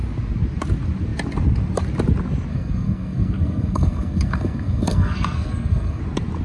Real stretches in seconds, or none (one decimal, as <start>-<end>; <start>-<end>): 0.0-2.5; 6.0-6.4